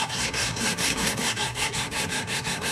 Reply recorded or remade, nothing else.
remade